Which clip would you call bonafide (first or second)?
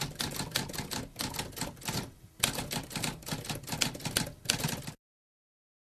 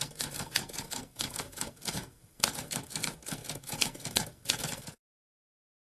first